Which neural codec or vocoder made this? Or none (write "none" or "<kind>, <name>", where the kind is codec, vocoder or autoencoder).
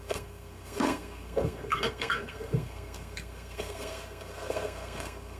codec, SNAC